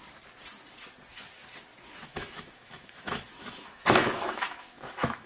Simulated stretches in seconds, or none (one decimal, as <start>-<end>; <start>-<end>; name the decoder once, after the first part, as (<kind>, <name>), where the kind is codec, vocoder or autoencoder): 1.7-5.3 (autoencoder, DAC-VAE)